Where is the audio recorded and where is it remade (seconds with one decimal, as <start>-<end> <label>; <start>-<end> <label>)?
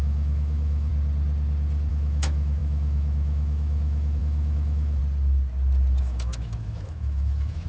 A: 0.0-0.9 remade; 0.9-1.9 recorded; 1.9-5.0 remade; 5.0-6.0 recorded; 6.0-7.7 remade